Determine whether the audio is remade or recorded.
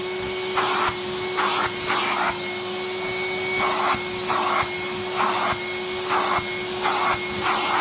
recorded